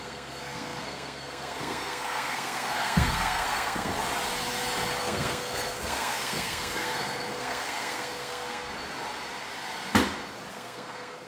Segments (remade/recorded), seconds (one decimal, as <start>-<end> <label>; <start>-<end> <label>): 0.0-3.9 remade; 3.9-5.0 recorded; 5.0-8.7 remade; 8.7-10.5 recorded; 10.5-11.3 remade

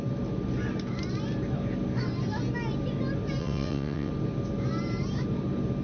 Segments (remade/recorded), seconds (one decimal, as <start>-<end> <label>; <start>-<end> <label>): 0.0-3.4 recorded; 3.4-4.1 remade; 4.1-5.8 recorded